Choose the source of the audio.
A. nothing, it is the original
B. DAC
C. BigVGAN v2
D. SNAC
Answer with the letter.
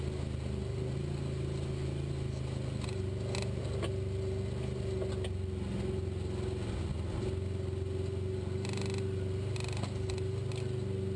A